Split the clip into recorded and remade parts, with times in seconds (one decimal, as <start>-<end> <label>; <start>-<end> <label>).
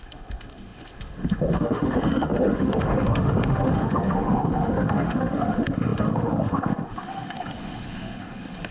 0.0-8.7 remade